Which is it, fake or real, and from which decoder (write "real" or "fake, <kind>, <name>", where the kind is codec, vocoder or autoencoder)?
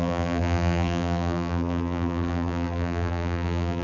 fake, vocoder, BigVGAN v2